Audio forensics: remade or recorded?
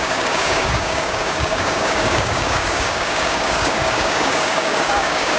remade